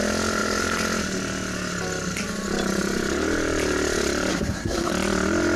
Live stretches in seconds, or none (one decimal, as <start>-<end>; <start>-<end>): 0.0-4.3; 4.9-5.6